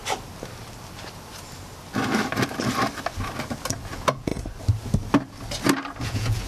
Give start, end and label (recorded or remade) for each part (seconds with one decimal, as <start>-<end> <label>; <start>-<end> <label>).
0.0-3.9 recorded; 3.9-4.3 remade; 4.3-6.0 recorded; 6.0-6.5 remade